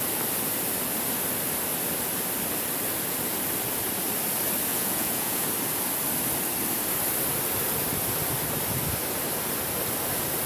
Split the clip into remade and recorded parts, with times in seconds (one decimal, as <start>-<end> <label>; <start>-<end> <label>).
0.0-4.7 recorded; 4.7-5.5 remade; 5.5-10.5 recorded